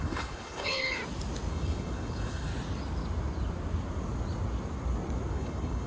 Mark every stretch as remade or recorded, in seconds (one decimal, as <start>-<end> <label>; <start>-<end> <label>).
0.0-1.0 remade; 1.0-1.5 recorded; 1.5-2.5 remade; 2.5-5.3 recorded; 5.3-5.9 remade